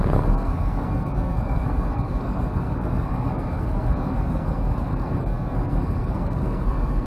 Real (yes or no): no